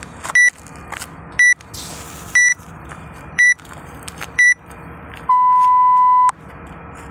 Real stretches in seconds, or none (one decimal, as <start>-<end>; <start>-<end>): 0.0-2.5; 4.7-7.1